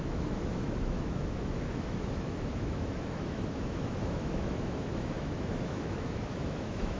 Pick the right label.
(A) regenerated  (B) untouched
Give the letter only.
A